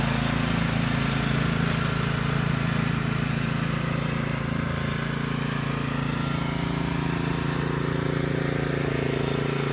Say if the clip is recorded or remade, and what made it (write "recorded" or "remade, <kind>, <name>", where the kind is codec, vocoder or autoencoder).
recorded